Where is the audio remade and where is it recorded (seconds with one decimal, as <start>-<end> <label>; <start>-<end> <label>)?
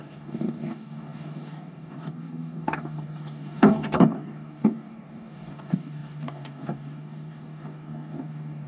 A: 0.0-8.7 remade